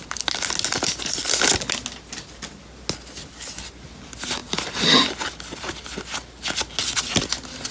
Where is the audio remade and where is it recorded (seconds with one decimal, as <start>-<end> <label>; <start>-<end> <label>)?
0.0-7.7 recorded